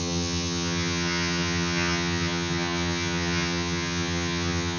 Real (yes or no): no